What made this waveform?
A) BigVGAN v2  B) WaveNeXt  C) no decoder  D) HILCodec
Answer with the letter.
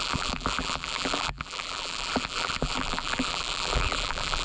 A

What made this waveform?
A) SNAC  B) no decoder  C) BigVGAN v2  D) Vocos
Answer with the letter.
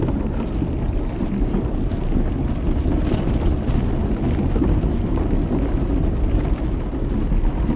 B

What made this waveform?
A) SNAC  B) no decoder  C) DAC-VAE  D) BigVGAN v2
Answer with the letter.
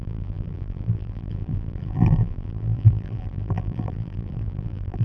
D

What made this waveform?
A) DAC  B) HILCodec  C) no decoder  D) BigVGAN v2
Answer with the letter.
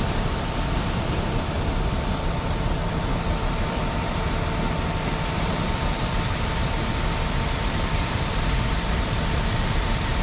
D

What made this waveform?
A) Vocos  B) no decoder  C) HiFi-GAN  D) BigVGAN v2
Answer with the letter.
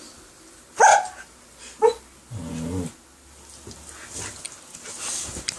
B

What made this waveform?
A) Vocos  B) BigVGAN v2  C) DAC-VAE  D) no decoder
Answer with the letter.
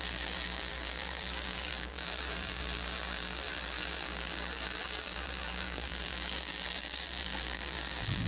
B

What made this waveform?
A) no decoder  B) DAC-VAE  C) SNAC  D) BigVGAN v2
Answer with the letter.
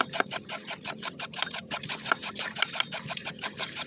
D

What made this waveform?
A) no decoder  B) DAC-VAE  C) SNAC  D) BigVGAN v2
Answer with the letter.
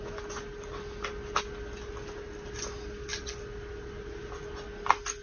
A